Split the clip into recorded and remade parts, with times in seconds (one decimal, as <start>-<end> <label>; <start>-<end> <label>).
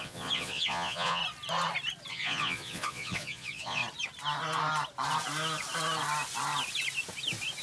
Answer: 0.0-1.2 remade; 1.2-2.1 recorded; 2.1-3.8 remade; 3.8-7.6 recorded